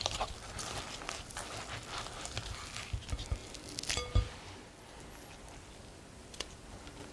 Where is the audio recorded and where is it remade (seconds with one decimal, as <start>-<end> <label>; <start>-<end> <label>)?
0.0-7.1 recorded